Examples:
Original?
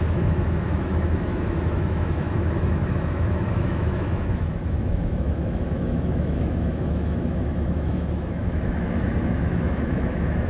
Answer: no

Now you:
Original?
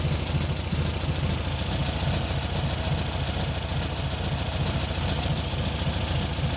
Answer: yes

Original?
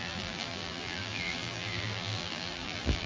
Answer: no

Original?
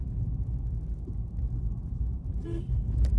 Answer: yes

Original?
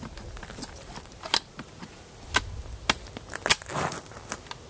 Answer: yes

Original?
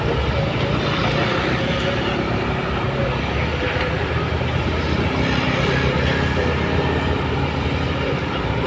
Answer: yes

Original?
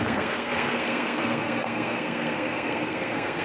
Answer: no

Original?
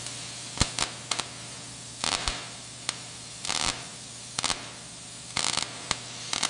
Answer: yes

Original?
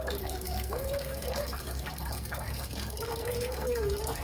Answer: no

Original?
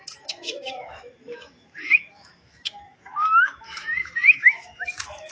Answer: no